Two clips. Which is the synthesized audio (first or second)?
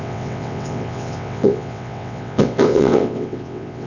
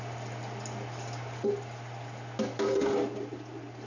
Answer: first